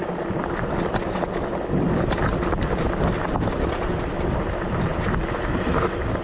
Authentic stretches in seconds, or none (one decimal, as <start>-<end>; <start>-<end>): 0.0-6.2